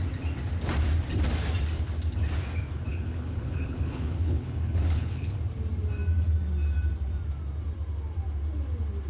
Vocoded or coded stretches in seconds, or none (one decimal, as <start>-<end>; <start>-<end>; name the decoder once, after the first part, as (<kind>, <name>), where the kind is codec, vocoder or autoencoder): 2.9-5.4 (codec, HILCodec)